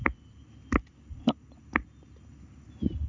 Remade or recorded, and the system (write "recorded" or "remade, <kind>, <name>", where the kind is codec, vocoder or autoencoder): recorded